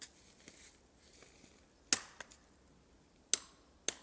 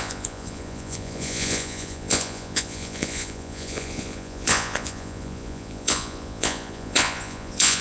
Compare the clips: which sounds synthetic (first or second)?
second